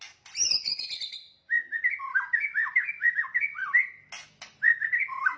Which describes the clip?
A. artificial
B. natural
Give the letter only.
B